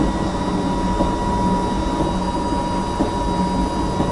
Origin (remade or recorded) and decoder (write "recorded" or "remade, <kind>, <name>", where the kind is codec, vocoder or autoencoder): recorded